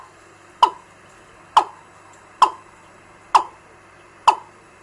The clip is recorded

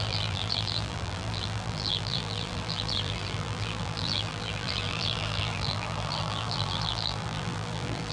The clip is remade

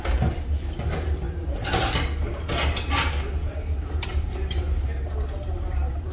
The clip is recorded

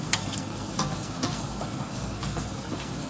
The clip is remade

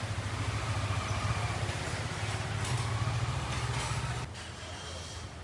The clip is recorded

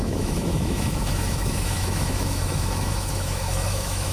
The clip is remade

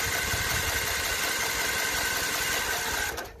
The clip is recorded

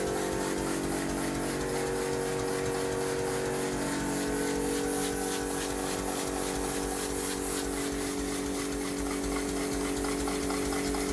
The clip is recorded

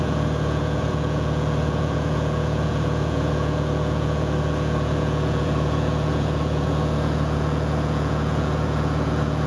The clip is remade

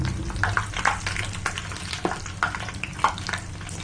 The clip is recorded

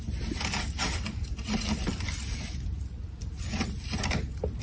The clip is recorded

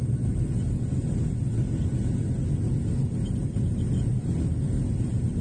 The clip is recorded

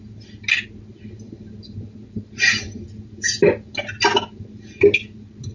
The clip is recorded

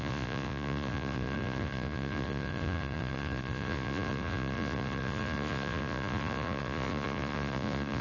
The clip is remade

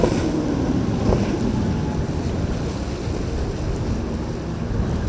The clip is recorded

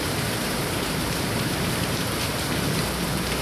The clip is remade